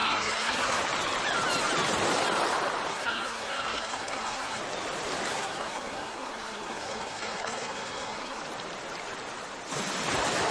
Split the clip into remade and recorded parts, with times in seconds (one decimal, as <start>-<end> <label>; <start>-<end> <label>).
0.0-0.8 remade; 0.8-2.9 recorded; 2.9-4.6 remade; 4.6-5.3 recorded; 5.3-8.4 remade; 8.4-10.5 recorded